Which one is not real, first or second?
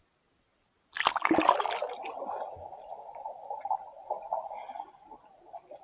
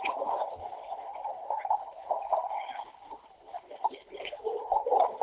second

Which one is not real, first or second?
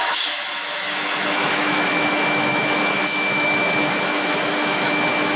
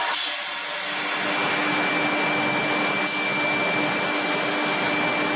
first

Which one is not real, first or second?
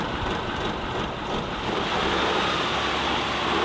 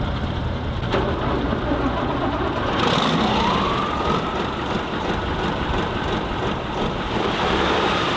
second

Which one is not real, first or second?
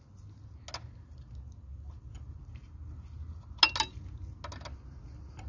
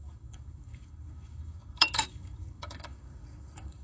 second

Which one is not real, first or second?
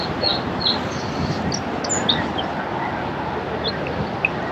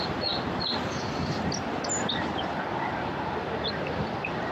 second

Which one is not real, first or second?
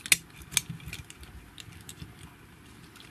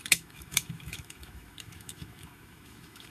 second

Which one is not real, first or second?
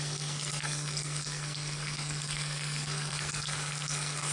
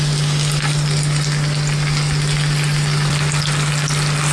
first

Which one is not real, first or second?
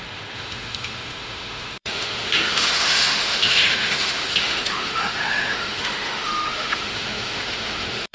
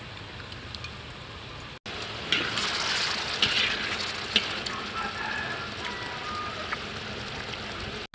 first